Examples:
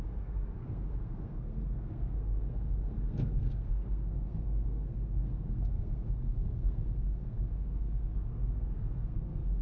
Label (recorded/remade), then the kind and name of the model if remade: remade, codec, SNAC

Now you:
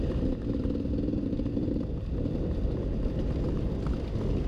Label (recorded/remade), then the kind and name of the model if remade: recorded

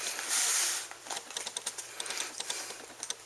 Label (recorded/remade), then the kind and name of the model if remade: recorded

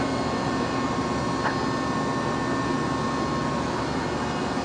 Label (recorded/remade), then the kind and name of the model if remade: recorded